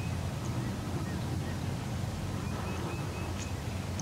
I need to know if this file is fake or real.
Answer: real